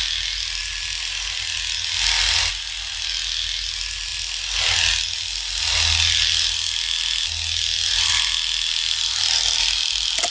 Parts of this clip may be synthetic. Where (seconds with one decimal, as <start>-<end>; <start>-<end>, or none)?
none